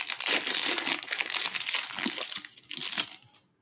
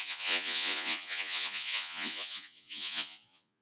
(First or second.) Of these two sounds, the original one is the first